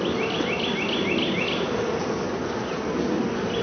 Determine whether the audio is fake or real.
real